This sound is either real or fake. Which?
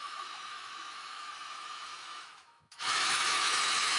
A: fake